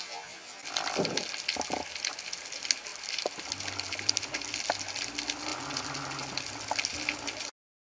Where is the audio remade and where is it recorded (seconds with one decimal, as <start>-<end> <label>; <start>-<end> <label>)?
0.0-7.9 recorded